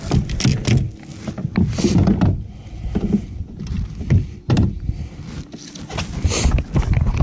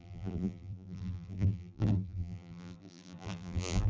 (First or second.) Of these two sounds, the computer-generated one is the second